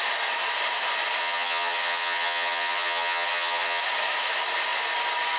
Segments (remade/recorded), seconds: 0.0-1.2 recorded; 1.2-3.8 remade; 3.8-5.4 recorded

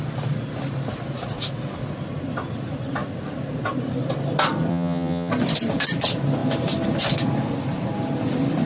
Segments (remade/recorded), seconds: 0.0-4.7 recorded; 4.7-5.3 remade; 5.3-8.7 recorded

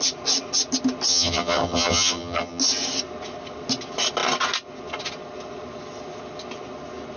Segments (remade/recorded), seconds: 0.0-1.1 recorded; 1.1-2.6 remade; 2.6-7.2 recorded

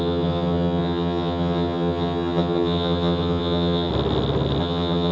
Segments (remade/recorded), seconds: 0.0-3.9 remade; 3.9-4.6 recorded; 4.6-5.1 remade

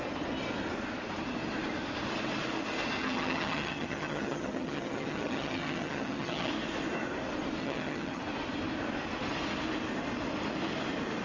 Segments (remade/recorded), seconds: 0.0-3.0 recorded; 3.0-6.5 remade; 6.5-7.6 recorded; 7.6-8.2 remade; 8.2-11.2 recorded